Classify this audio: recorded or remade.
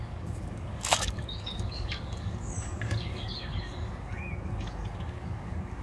remade